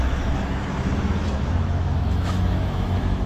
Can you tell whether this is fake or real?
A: fake